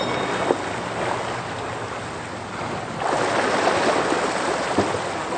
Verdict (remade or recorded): recorded